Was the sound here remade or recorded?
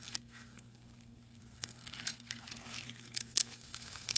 remade